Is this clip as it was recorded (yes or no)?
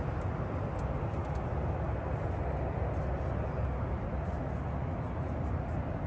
yes